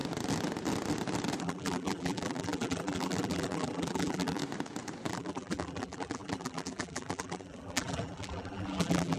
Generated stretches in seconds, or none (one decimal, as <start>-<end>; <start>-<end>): 1.4-4.4; 5.1-9.2